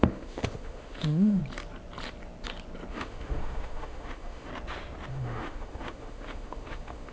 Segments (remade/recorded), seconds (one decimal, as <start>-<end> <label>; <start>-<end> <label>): 0.0-1.4 remade; 1.4-2.9 recorded; 2.9-4.5 remade; 4.5-5.1 recorded; 5.1-7.1 remade